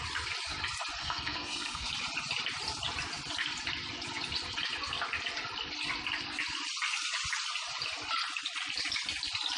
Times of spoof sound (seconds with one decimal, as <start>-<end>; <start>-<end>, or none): 1.0-1.9